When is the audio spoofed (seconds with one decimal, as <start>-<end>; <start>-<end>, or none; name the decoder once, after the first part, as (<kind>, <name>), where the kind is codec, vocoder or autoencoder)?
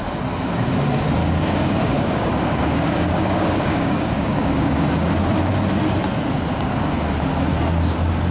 1.2-5.1 (codec, DAC)